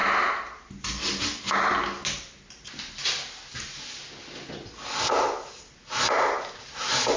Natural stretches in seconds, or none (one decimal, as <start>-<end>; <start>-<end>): 0.0-7.2